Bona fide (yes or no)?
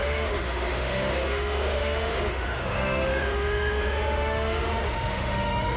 no